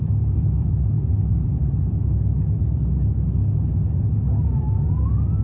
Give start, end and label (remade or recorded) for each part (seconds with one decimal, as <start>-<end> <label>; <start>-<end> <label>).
0.0-5.4 recorded